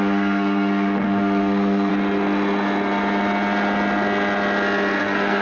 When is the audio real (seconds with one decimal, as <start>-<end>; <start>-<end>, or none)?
1.9-5.0